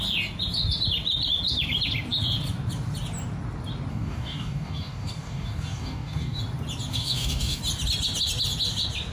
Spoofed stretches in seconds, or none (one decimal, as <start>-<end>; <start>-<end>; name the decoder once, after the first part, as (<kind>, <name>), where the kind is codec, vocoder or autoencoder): 3.9-6.4 (codec, DAC); 6.9-7.6